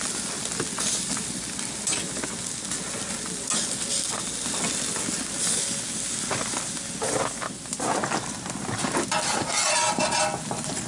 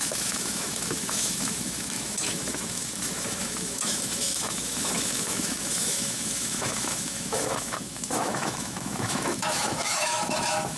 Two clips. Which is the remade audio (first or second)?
second